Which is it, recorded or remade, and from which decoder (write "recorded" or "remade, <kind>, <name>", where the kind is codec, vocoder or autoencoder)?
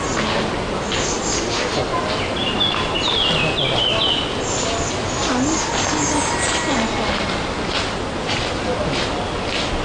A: recorded